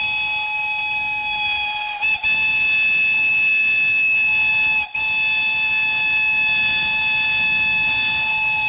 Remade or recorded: recorded